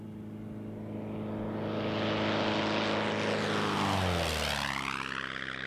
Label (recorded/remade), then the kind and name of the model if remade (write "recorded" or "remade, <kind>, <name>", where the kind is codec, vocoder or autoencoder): recorded